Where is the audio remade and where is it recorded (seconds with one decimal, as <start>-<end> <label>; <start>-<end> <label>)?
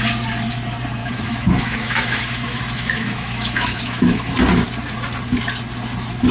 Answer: 0.0-1.0 recorded; 1.0-4.2 remade; 4.2-6.3 recorded